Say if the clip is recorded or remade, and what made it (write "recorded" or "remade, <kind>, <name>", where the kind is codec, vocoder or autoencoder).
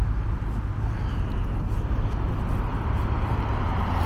recorded